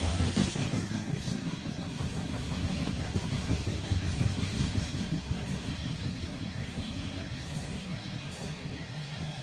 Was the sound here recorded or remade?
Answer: remade